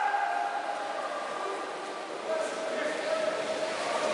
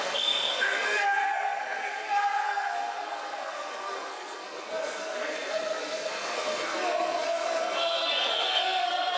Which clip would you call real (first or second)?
first